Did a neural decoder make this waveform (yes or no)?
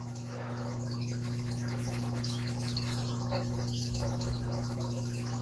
yes